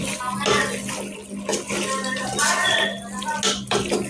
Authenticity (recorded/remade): recorded